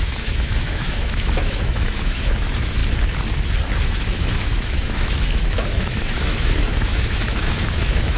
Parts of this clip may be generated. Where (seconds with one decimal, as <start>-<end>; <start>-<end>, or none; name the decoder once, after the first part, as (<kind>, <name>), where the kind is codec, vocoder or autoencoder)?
0.0-2.8 (autoencoder, DAC-VAE); 3.8-8.2